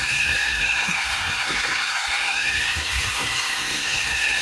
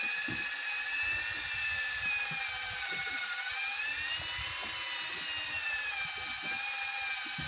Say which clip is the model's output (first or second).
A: first